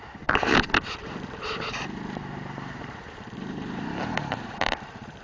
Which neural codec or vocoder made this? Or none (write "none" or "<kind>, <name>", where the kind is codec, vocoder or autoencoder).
vocoder, BigVGAN v2